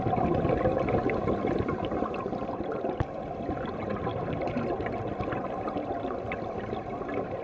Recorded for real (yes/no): yes